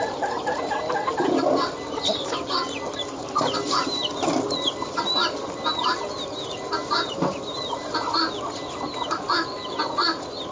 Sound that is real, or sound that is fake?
real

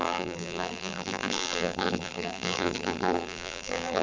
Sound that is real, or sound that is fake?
fake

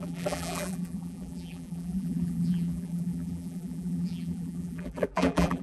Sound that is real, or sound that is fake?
fake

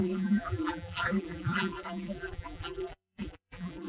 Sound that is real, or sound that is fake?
fake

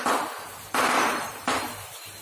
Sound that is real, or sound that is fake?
fake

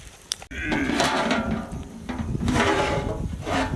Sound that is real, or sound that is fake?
fake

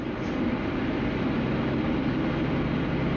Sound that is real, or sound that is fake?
real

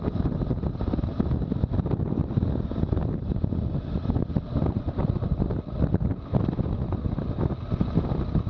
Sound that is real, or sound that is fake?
real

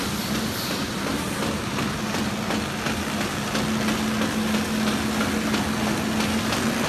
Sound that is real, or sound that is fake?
real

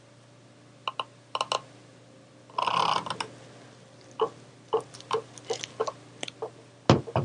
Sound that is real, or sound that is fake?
real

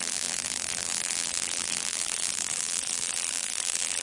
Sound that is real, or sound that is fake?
fake